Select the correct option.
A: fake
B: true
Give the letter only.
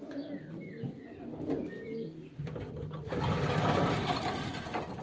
B